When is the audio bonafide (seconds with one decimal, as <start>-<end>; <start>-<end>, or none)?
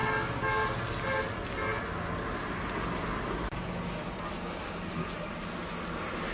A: 0.0-6.3